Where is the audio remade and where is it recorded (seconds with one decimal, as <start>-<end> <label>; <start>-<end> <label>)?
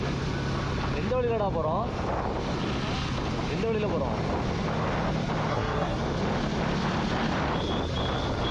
0.0-5.5 recorded; 5.5-6.0 remade; 6.0-8.5 recorded